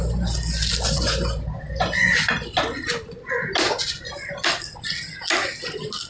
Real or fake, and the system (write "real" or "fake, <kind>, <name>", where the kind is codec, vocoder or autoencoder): real